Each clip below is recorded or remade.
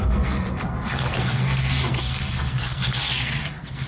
remade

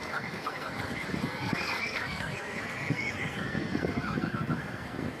remade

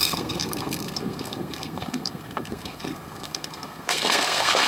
remade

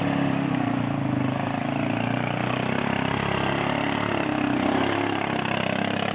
recorded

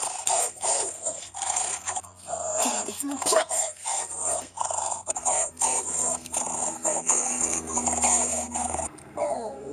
remade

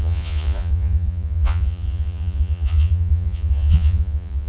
remade